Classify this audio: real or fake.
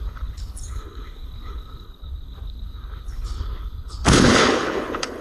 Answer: fake